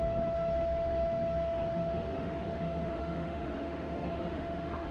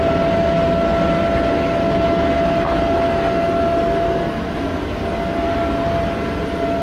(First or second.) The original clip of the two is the second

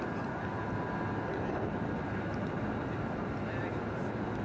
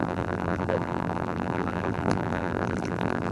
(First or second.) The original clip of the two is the first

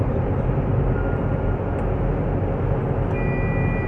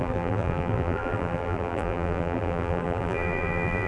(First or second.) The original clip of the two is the first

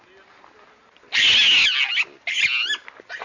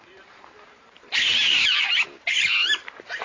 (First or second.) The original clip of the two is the first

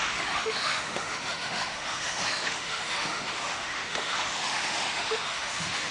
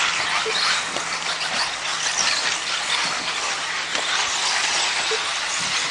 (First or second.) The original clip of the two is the second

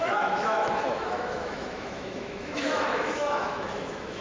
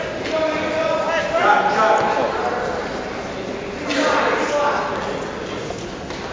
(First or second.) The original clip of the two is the second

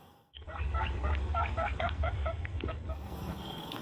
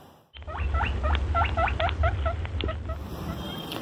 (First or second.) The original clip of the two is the second